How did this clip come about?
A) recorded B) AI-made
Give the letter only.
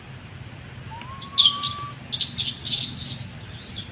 A